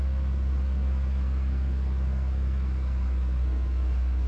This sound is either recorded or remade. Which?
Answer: remade